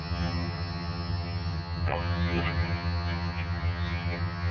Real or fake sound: fake